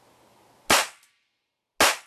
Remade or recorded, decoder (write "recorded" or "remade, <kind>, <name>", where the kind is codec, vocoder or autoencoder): recorded